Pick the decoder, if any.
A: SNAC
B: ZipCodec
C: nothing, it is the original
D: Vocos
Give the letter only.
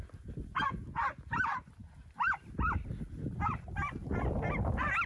C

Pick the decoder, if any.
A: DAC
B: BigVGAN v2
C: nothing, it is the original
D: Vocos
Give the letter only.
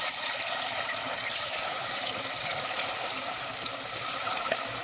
B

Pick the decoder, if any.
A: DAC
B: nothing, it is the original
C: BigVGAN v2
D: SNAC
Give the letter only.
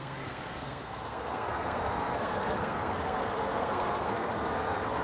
D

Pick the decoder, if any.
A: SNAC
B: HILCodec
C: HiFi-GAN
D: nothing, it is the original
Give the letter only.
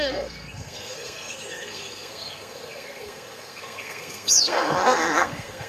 A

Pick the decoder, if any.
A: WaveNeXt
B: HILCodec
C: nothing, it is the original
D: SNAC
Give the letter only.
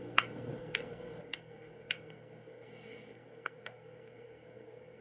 D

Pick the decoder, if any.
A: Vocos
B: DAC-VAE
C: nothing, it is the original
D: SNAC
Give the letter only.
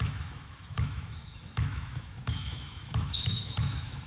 B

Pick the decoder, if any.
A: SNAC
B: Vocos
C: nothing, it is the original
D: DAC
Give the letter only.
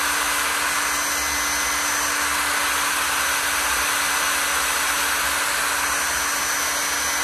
C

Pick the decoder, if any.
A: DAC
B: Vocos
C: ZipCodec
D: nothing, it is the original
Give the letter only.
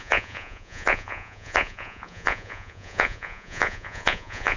B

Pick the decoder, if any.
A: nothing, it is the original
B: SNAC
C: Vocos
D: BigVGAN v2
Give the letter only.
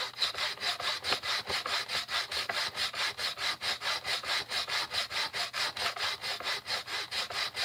A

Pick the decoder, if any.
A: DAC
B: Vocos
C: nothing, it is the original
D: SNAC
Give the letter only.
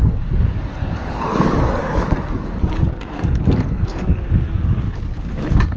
A